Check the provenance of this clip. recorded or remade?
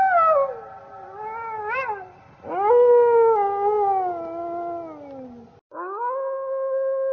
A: recorded